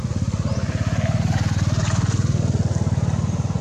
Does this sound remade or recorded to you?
recorded